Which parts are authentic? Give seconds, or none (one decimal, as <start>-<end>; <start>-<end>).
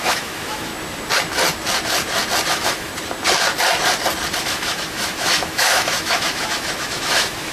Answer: 0.7-2.5; 2.9-4.4